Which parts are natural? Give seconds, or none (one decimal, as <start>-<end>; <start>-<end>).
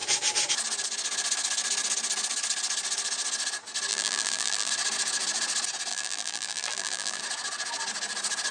0.0-3.9; 4.7-5.9; 7.2-8.5